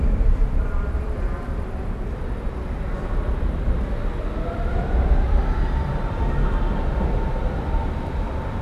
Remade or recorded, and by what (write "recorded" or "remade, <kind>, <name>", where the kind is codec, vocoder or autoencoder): remade, vocoder, BigVGAN v2